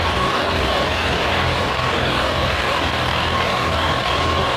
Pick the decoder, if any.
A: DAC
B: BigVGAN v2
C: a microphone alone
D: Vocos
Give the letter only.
A